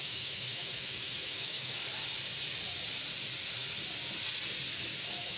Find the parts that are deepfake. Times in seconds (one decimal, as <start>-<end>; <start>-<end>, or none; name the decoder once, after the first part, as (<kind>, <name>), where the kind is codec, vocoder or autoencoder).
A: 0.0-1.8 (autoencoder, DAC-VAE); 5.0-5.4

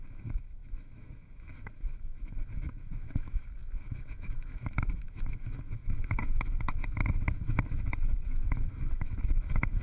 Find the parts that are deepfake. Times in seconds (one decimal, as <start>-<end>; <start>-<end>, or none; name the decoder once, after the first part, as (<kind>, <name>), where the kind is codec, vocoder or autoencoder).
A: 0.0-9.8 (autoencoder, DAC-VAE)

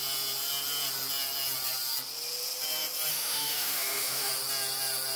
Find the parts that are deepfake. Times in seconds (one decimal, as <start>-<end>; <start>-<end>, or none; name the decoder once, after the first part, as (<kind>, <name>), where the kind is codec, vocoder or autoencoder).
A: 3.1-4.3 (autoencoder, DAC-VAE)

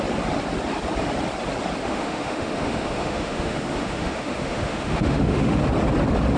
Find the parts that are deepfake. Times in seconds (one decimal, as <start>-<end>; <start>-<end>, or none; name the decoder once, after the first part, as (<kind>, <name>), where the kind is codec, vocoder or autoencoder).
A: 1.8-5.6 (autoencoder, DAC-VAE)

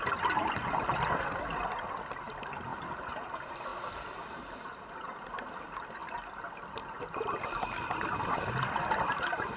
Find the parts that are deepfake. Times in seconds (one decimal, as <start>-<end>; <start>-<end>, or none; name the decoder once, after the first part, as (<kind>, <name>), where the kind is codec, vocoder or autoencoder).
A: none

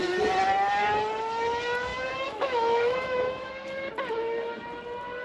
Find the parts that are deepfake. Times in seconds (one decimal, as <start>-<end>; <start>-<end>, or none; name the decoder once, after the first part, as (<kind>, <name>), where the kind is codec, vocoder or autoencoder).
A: 1.9-3.5 (autoencoder, DAC-VAE)

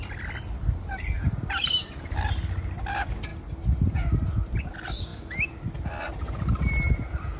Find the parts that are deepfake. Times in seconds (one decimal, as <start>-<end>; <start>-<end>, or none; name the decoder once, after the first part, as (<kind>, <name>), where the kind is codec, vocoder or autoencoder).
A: none